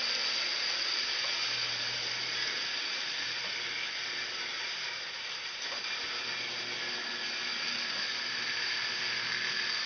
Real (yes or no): yes